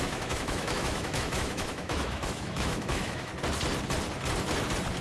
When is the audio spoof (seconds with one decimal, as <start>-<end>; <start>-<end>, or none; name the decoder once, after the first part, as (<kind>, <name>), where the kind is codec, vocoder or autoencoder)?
0.0-3.3 (autoencoder, DAC-VAE)

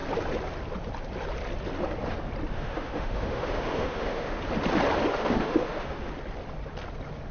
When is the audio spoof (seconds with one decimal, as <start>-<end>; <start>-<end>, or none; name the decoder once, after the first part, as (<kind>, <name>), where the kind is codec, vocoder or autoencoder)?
2.5-4.4 (autoencoder, DAC-VAE); 5.1-6.1

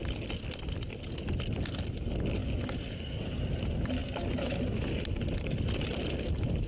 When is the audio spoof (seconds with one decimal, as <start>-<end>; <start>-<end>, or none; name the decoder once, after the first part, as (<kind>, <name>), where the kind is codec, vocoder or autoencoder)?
none

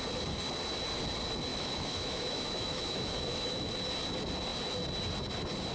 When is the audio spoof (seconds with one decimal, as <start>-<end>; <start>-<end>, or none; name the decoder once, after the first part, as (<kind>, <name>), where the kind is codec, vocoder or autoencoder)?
1.5-3.7 (autoencoder, DAC-VAE)